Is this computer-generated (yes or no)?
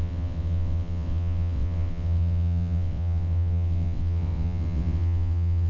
yes